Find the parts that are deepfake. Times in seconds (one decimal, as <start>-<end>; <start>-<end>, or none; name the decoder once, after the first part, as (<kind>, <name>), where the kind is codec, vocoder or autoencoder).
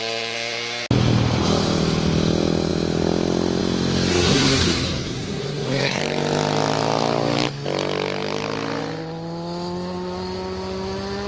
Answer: 4.1-6.0 (codec, SNAC)